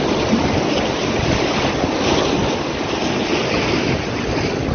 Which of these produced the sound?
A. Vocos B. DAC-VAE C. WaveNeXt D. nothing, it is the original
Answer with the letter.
D